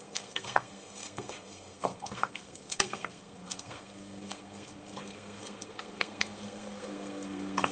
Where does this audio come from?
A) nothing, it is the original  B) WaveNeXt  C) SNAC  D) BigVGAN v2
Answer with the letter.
C